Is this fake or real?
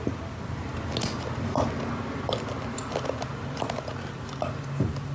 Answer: real